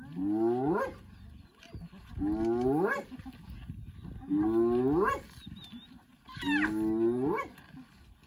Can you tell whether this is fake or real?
real